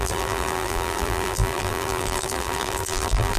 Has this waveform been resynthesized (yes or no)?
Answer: yes